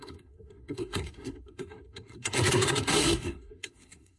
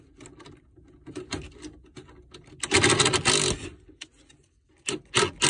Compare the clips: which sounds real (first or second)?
second